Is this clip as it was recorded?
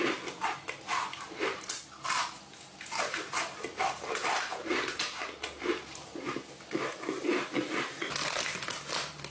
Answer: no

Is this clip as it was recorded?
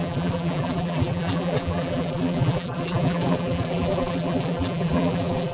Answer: no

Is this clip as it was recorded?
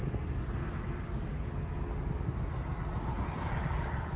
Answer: yes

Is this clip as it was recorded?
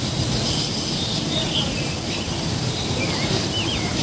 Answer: no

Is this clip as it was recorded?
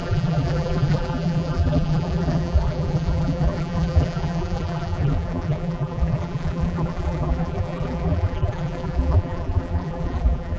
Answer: no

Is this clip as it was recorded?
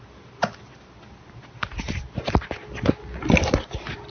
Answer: yes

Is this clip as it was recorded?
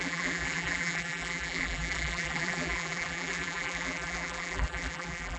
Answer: no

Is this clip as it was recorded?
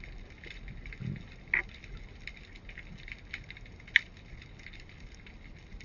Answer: yes